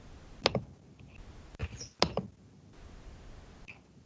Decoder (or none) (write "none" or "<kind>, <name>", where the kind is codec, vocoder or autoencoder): none